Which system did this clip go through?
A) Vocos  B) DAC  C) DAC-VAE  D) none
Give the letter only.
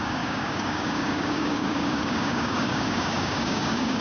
B